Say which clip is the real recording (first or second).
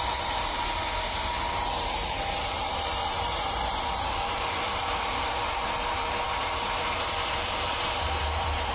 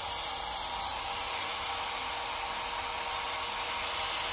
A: second